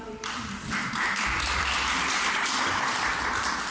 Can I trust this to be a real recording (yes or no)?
no